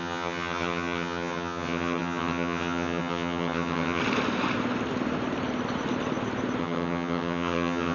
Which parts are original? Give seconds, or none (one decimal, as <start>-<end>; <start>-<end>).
4.0-6.6